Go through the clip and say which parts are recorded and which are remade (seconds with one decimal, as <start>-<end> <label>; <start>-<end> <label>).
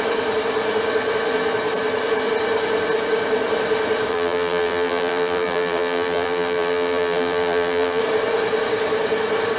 0.0-4.1 recorded; 4.1-8.0 remade; 8.0-9.6 recorded